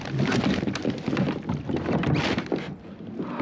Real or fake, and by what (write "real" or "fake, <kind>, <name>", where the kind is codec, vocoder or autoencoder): real